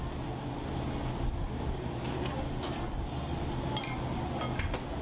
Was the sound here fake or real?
real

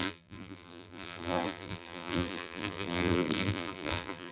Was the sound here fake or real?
fake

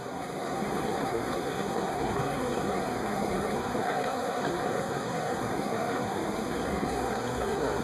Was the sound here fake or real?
fake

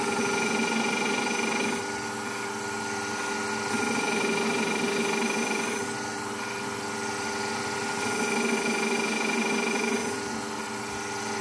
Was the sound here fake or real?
real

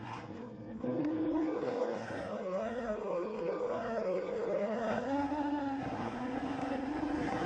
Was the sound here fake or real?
fake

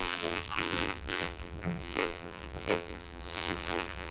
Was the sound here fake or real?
fake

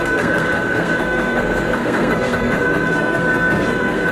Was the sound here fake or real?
fake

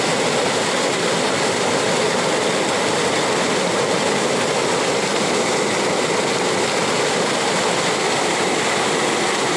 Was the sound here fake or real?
real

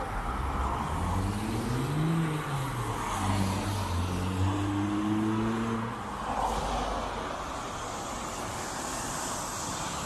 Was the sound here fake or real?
real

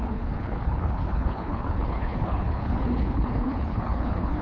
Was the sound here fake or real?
fake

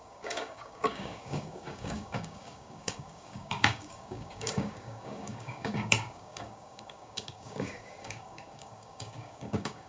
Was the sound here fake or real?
fake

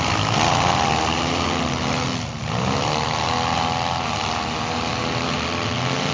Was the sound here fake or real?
real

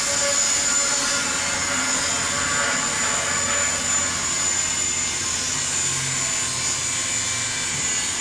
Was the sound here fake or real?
real